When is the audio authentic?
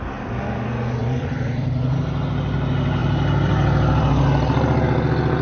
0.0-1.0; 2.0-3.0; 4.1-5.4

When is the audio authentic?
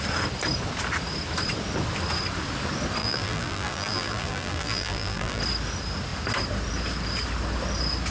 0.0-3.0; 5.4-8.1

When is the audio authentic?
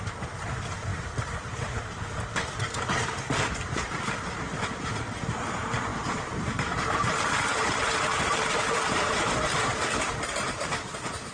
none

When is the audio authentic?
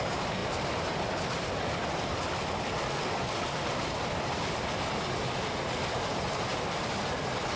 0.0-0.4; 5.0-7.6